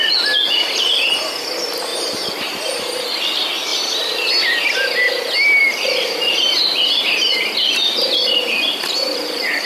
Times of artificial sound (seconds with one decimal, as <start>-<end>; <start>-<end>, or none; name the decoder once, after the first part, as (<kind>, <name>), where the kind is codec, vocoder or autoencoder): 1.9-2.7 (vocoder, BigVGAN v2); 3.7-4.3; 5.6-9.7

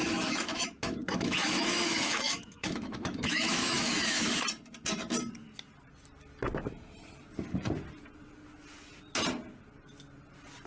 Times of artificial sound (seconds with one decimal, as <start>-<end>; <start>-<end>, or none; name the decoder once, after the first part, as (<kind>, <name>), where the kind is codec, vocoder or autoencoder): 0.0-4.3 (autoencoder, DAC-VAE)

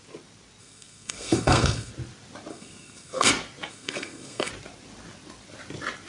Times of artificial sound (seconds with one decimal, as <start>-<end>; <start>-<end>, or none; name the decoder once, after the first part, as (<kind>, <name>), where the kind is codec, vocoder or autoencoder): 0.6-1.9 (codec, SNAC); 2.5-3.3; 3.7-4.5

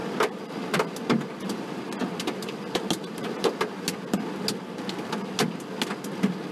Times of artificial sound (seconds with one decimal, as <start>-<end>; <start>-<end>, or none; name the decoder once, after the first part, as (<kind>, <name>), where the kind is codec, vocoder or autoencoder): none